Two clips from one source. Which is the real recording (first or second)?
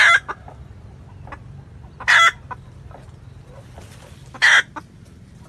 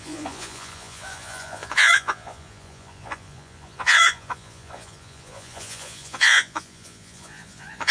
first